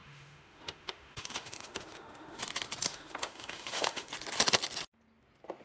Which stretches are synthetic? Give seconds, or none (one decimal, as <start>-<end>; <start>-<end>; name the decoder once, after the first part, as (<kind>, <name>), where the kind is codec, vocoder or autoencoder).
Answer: 0.0-2.4 (autoencoder, DAC-VAE); 2.9-4.1